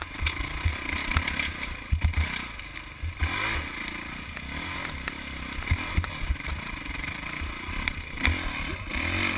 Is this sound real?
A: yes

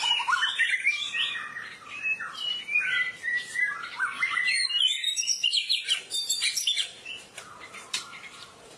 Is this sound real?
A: no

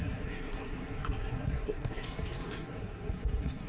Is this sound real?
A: no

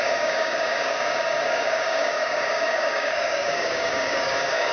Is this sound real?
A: no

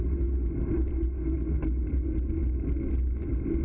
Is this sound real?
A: yes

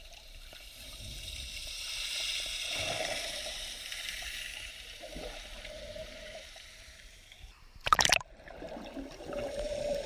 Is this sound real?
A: no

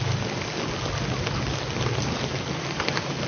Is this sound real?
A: yes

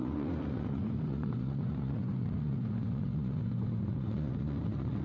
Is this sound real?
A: no